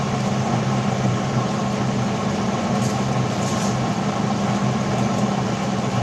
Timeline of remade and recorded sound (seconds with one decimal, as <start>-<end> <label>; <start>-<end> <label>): 0.0-1.6 remade; 1.6-5.2 recorded; 5.2-6.0 remade